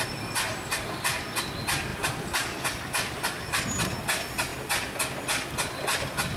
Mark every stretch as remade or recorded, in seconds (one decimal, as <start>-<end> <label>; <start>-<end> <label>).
0.0-0.5 recorded; 0.5-1.2 remade; 1.2-1.9 recorded; 1.9-3.6 remade; 3.6-6.4 recorded

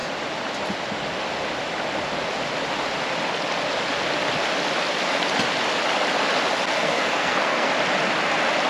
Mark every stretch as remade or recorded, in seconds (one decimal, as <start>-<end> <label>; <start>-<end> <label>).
0.0-6.7 recorded; 6.7-7.7 remade; 7.7-8.7 recorded

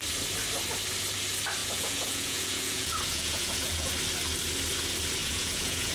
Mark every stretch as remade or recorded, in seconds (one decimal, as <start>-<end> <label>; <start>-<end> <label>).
0.0-1.6 recorded; 1.6-3.9 remade; 3.9-5.2 recorded; 5.2-5.9 remade

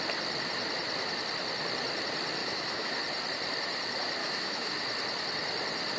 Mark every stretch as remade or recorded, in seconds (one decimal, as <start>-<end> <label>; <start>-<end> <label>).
0.0-2.4 recorded; 2.4-2.9 remade; 2.9-4.2 recorded; 4.2-4.7 remade; 4.7-6.0 recorded

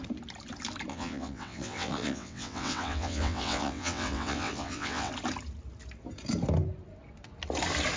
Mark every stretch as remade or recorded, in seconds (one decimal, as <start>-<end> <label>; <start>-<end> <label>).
0.0-0.9 recorded; 0.9-5.1 remade; 5.1-8.0 recorded

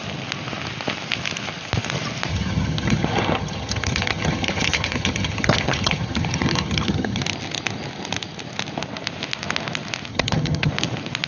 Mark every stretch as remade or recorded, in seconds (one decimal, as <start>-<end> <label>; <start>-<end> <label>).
0.0-2.3 recorded; 2.3-7.2 remade; 7.2-10.1 recorded; 10.1-10.7 remade; 10.7-11.3 recorded

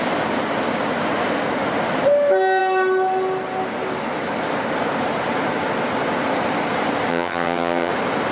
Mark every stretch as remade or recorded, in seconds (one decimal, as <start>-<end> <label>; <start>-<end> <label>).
0.0-7.1 recorded; 7.1-7.9 remade; 7.9-8.3 recorded

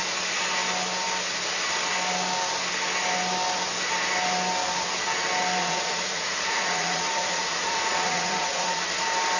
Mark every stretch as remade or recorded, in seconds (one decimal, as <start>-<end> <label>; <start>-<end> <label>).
0.0-5.6 recorded; 5.6-8.9 remade; 8.9-9.4 recorded